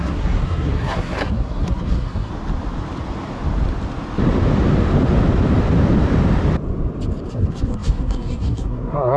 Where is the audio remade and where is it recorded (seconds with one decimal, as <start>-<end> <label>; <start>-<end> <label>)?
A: 0.0-2.3 remade; 2.3-7.3 recorded; 7.3-9.2 remade